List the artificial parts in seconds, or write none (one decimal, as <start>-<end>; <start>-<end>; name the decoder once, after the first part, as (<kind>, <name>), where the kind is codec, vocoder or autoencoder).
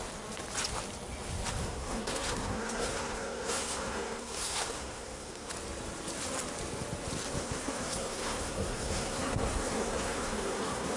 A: 1.6-5.5 (codec, SNAC); 7.4-11.0